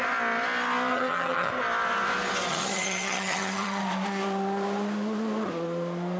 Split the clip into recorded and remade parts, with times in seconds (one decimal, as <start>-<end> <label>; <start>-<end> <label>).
0.0-0.9 recorded; 0.9-1.5 remade; 1.5-2.5 recorded; 2.5-3.8 remade; 3.8-6.2 recorded